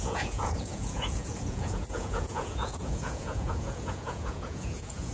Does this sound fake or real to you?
fake